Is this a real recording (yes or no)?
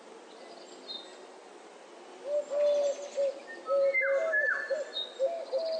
yes